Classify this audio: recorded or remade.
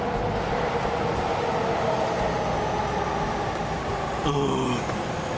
recorded